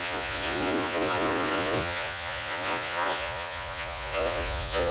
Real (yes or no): no